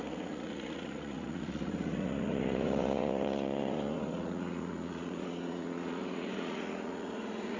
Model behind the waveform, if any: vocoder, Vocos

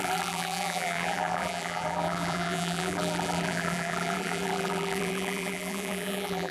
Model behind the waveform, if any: vocoder, BigVGAN v2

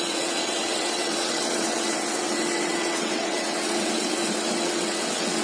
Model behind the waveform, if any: vocoder, WaveNeXt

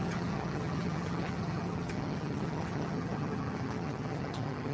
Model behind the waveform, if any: vocoder, HiFi-GAN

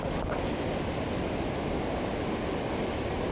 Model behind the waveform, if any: none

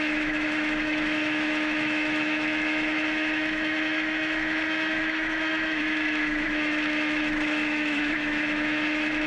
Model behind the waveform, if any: autoencoder, DAC-VAE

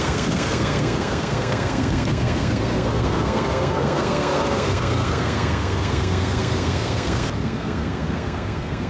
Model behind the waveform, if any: codec, SNAC